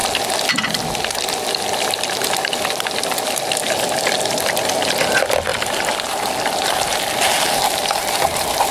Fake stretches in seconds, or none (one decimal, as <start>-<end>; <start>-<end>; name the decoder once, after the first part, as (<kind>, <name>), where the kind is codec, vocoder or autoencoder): none